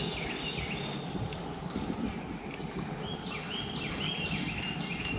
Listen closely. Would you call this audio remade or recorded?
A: recorded